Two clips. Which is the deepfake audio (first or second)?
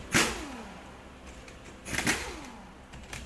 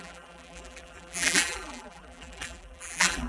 second